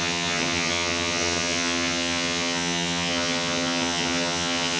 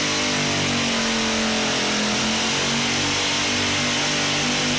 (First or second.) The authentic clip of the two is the second